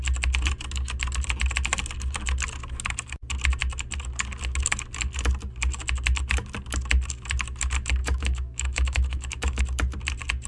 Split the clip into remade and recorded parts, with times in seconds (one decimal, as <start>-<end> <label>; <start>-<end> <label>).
0.0-8.0 recorded; 8.0-9.6 remade; 9.6-10.5 recorded